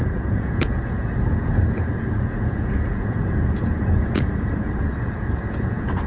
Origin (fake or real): fake